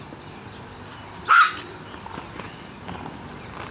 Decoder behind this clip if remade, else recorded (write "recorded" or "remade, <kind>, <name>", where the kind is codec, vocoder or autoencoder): recorded